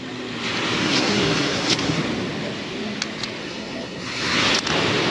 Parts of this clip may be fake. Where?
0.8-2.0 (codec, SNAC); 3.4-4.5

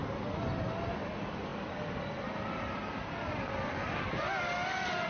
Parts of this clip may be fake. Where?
none

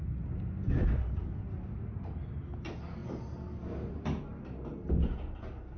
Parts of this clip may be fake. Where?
none

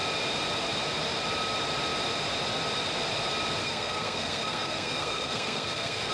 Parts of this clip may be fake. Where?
3.6-6.1 (codec, SNAC)

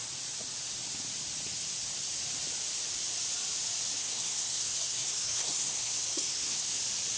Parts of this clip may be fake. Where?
4.0-6.8 (codec, SNAC)

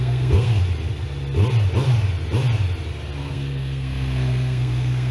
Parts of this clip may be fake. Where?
0.0-0.6 (codec, SNAC); 3.2-5.1

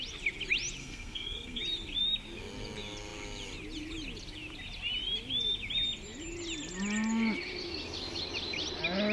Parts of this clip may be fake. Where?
0.8-1.6 (codec, SNAC)